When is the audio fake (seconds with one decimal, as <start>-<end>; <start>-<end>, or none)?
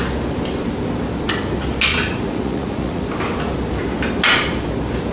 1.9-3.1